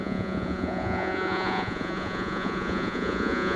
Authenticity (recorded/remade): remade